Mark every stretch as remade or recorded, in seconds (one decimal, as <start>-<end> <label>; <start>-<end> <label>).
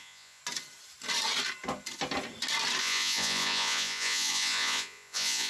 0.0-0.4 remade; 0.4-2.8 recorded; 2.8-5.5 remade